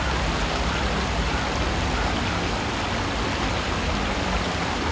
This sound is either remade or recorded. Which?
recorded